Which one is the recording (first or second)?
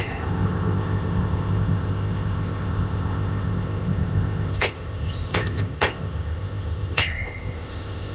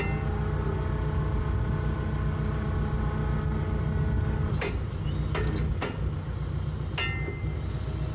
second